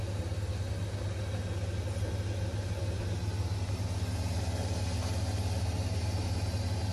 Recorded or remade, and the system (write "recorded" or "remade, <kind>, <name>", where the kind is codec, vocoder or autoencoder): recorded